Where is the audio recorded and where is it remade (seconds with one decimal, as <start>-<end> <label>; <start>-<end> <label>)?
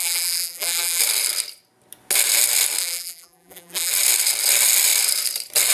0.0-1.0 remade; 1.0-2.8 recorded; 2.8-3.9 remade; 3.9-5.7 recorded